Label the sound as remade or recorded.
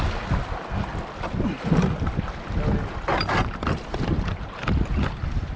recorded